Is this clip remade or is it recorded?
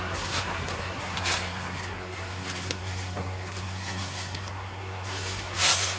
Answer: remade